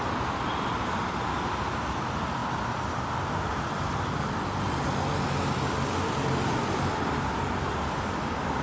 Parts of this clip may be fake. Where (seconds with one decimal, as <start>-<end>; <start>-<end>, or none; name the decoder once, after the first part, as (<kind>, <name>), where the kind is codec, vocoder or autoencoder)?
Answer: none